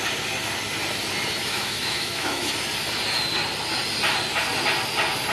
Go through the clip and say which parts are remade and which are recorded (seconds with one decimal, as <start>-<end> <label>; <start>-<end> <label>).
0.0-1.4 recorded; 1.4-2.5 remade; 2.5-5.3 recorded